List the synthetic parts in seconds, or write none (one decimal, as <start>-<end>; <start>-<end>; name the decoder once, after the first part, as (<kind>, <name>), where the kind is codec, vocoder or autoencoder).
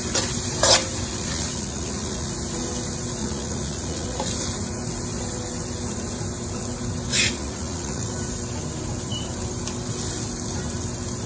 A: 1.1-2.3 (vocoder, Vocos); 3.2-4.3; 7.2-8.1